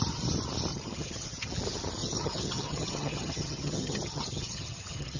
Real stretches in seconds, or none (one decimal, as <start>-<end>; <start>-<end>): 0.0-0.7; 1.5-2.0

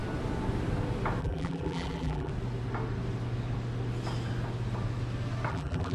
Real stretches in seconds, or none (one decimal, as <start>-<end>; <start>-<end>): 0.0-1.2; 2.3-5.5

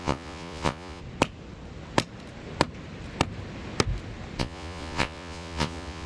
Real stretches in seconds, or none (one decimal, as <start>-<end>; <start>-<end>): 1.0-4.4

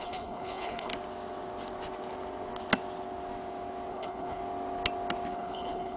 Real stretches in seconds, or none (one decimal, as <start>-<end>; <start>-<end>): 0.9-3.9; 4.4-5.3

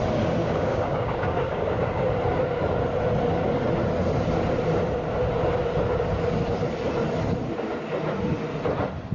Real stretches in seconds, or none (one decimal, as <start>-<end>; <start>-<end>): 0.0-0.4; 2.1-9.1

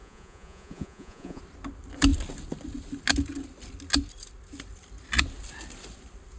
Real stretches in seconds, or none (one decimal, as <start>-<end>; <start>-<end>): 1.4-6.4

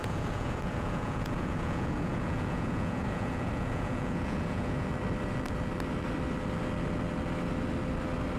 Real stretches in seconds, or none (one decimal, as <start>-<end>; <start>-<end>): 4.9-8.4

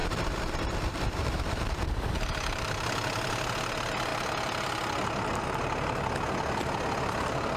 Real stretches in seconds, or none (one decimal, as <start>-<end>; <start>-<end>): 2.7-7.6